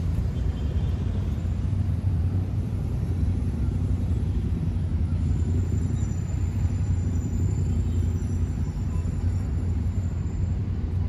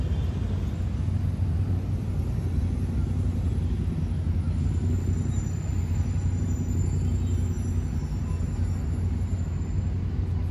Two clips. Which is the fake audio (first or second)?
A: first